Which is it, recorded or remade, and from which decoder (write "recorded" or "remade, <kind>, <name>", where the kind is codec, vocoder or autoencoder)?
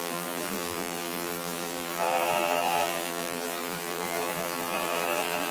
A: remade, vocoder, BigVGAN v2